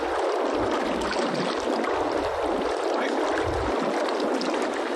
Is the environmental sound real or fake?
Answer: real